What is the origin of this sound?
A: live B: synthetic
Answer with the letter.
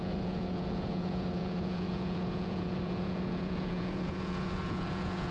B